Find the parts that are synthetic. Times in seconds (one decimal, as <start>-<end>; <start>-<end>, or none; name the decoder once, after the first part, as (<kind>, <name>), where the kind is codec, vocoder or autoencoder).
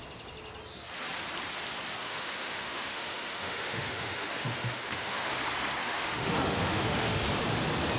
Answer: 2.0-5.3 (autoencoder, DAC-VAE); 5.8-7.2